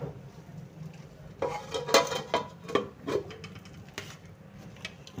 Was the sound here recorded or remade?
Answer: recorded